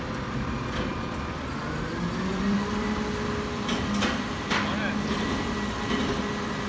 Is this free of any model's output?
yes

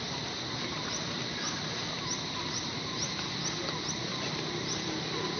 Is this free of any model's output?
yes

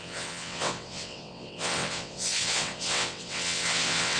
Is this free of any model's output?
no